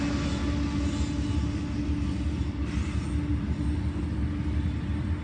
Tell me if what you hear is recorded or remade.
recorded